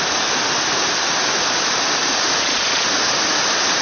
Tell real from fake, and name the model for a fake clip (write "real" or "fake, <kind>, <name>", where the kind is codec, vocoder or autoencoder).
real